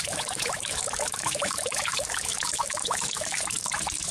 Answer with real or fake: fake